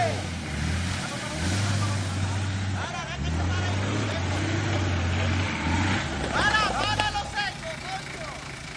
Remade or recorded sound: recorded